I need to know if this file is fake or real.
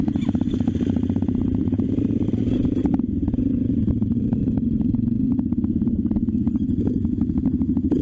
real